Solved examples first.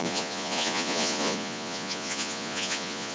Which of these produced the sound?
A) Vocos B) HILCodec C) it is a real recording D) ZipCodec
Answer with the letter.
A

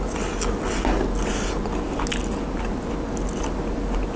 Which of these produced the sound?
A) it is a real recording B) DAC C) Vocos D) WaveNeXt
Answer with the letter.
A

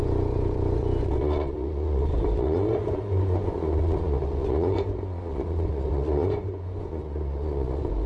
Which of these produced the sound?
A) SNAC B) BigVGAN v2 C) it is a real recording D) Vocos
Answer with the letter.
D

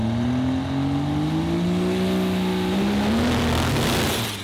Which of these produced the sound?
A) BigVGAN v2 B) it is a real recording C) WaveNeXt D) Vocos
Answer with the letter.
B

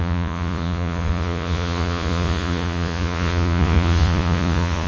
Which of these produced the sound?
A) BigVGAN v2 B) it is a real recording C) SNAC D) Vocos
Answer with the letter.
D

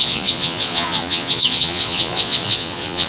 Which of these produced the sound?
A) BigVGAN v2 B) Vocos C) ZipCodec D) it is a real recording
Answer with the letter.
B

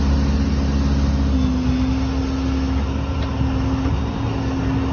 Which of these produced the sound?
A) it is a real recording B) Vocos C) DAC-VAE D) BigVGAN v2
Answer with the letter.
A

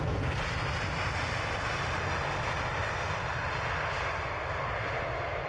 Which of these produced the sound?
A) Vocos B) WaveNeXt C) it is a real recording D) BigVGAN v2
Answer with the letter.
C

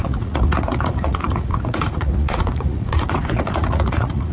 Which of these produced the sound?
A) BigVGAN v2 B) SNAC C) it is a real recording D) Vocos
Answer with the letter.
D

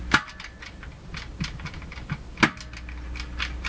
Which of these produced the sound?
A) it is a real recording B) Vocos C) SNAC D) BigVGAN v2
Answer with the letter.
A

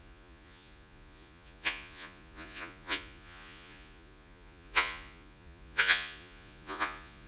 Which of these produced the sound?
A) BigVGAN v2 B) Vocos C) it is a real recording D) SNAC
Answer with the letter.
B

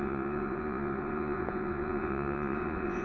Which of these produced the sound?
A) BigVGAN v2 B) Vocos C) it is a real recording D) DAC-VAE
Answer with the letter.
B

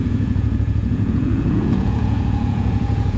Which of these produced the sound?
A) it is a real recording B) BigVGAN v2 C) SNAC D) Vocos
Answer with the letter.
D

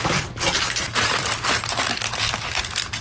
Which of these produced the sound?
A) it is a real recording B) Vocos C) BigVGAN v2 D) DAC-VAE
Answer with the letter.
A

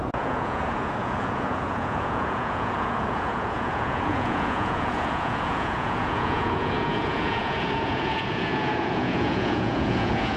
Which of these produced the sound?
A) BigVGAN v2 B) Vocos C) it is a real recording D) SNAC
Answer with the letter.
B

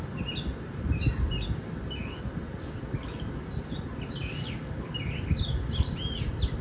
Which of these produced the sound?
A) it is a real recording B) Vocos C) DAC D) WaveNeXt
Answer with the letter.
A